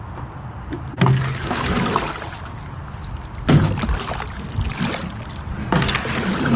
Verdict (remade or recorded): recorded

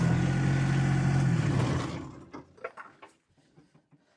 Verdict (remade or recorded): recorded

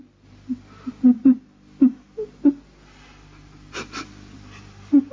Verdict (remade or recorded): recorded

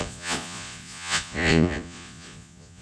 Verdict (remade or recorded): remade